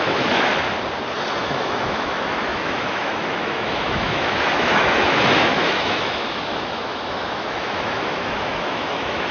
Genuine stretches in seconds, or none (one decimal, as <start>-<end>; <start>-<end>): 0.5-1.4